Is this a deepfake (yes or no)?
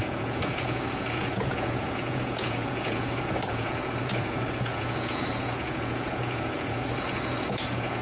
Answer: yes